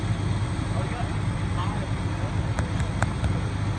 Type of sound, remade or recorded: recorded